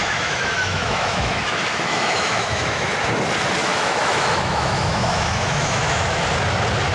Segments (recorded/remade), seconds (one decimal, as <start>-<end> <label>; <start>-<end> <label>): 0.0-2.9 remade; 2.9-3.6 recorded; 3.6-6.2 remade; 6.2-6.9 recorded